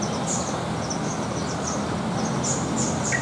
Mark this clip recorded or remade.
recorded